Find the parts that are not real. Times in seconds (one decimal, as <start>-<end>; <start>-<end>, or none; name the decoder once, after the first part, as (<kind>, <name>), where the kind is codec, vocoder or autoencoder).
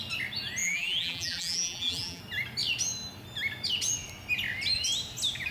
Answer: 0.6-2.2 (vocoder, BigVGAN v2)